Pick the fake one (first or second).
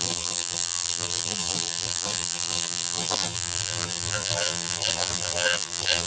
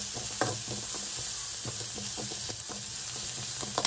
first